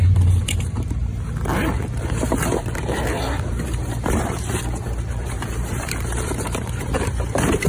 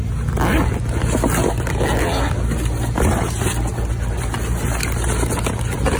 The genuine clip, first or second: second